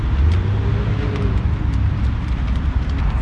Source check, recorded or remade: recorded